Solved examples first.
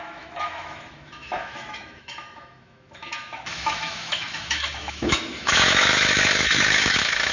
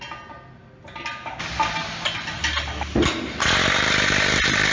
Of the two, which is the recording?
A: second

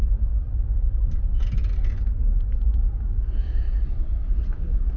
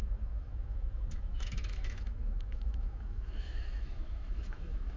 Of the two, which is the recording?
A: first